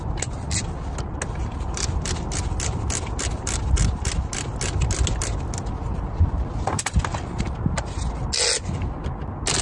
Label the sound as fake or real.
real